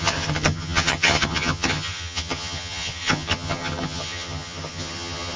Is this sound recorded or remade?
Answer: remade